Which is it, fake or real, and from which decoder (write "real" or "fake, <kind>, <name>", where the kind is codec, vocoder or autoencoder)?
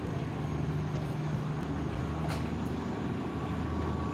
real